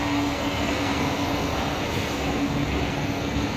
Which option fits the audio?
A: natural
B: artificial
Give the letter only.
B